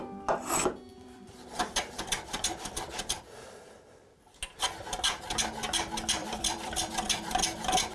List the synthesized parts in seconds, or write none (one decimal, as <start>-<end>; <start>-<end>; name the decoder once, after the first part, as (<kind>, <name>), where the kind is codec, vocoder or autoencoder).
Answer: 0.9-3.2 (vocoder, BigVGAN v2); 6.2-6.9